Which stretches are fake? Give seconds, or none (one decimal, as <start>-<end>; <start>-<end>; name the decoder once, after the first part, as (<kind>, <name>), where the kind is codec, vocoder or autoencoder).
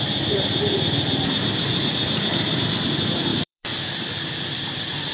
0.0-5.1 (vocoder, BigVGAN v2)